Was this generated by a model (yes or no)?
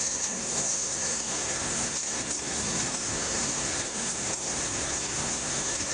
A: yes